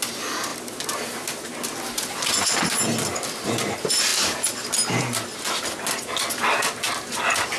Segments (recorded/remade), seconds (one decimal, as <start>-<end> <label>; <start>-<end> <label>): 0.0-7.6 recorded